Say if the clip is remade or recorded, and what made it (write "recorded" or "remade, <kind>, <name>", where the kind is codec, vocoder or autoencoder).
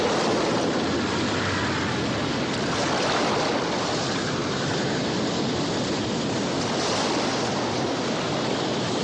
remade, vocoder, BigVGAN v2